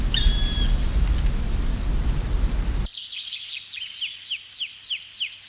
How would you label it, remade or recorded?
recorded